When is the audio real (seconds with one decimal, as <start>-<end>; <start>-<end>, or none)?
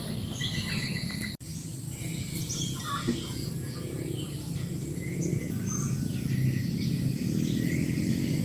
0.0-8.4